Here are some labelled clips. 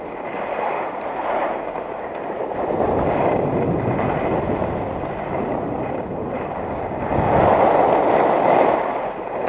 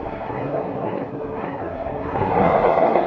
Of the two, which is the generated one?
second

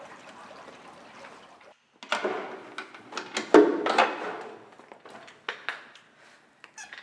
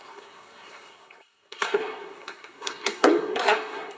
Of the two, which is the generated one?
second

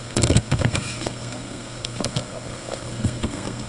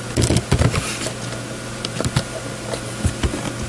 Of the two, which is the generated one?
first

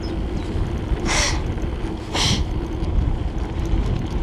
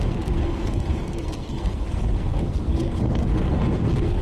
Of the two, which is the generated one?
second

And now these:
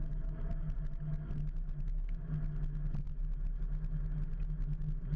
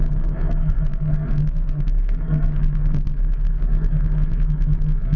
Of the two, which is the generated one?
second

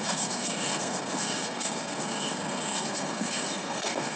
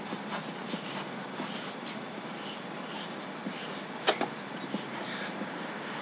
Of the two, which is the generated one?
first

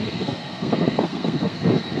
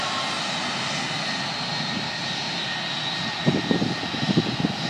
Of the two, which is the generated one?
first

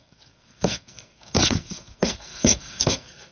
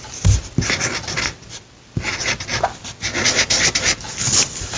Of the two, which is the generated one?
first